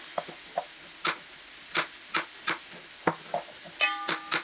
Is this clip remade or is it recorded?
recorded